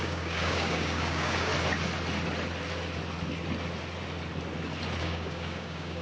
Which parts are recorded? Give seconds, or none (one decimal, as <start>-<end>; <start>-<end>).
1.5-5.0